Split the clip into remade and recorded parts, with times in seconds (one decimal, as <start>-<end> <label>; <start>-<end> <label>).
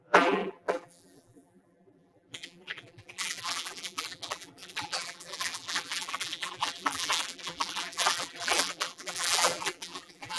0.0-10.4 remade